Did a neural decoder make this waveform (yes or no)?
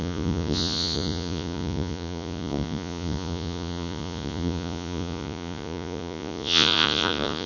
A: yes